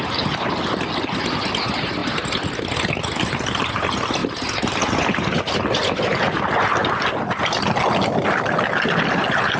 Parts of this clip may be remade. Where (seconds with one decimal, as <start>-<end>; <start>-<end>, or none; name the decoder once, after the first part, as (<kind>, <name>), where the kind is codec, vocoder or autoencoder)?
none